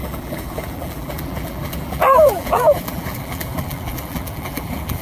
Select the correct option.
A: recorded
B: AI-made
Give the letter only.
B